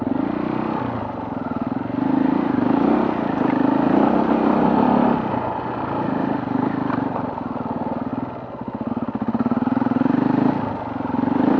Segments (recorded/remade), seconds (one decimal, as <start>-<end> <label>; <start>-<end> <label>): 0.0-5.3 recorded; 5.3-5.8 remade; 5.8-11.6 recorded